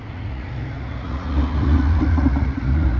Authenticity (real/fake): fake